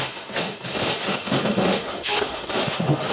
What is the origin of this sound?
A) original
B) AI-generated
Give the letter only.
B